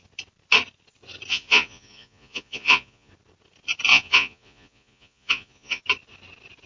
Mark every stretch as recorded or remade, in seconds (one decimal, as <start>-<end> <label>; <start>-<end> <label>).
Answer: 0.0-1.3 recorded; 1.3-3.1 remade; 3.1-3.9 recorded; 3.9-5.8 remade; 5.8-6.7 recorded